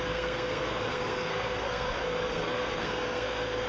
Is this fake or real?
fake